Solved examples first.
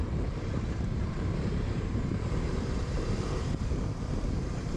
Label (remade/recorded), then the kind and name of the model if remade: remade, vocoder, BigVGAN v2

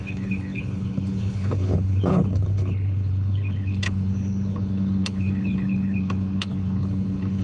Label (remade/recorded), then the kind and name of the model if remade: remade, codec, HILCodec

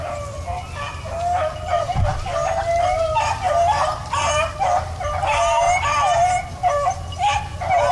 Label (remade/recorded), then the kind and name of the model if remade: recorded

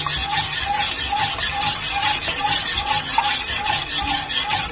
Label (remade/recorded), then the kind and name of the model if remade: recorded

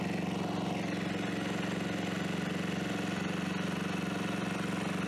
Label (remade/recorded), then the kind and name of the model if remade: recorded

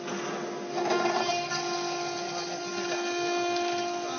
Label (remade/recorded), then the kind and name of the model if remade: recorded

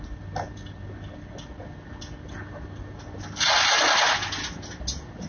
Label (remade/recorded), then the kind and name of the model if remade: recorded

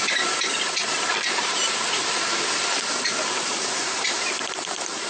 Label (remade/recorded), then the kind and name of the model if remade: recorded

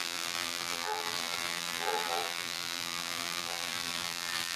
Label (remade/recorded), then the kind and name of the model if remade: remade, vocoder, BigVGAN v2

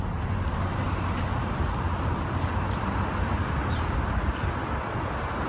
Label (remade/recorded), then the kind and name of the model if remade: recorded